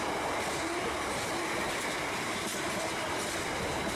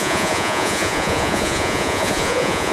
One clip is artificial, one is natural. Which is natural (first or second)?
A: first